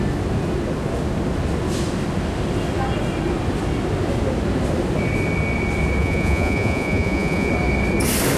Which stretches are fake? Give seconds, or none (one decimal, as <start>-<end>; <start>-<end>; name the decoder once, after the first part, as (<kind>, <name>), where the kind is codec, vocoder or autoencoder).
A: 6.0-7.5 (vocoder, Vocos)